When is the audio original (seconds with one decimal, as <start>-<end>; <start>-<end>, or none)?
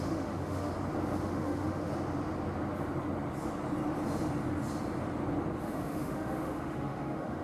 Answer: 0.7-1.2; 1.9-5.6